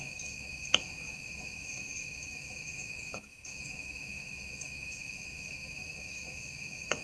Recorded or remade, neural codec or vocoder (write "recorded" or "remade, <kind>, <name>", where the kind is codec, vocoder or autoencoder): remade, autoencoder, DAC-VAE